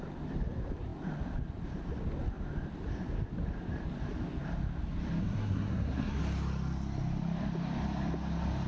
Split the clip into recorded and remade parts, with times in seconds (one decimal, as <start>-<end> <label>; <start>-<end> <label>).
0.0-5.2 recorded; 5.2-6.2 remade; 6.2-8.7 recorded